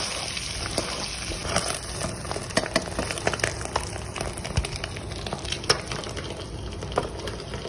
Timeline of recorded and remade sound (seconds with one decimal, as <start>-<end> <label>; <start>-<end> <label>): 0.0-7.7 recorded